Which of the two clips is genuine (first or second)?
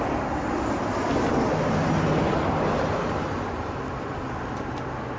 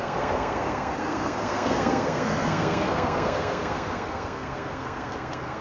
first